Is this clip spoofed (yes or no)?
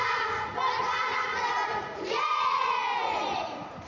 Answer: yes